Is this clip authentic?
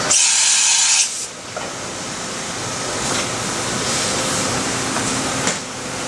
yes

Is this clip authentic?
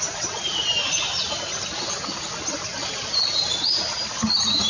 yes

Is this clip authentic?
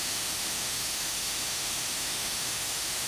no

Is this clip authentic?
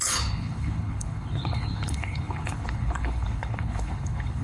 no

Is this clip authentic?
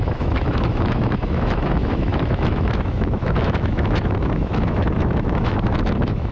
no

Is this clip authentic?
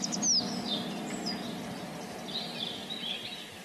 yes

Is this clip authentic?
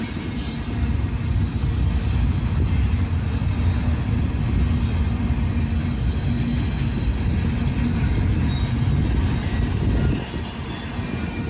yes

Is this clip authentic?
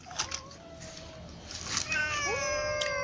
yes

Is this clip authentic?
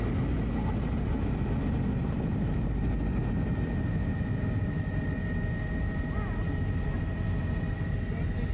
yes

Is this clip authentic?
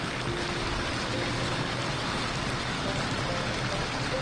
yes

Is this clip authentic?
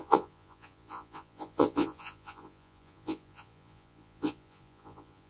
no